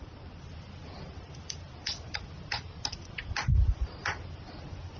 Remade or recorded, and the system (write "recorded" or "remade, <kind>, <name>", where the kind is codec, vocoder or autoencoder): recorded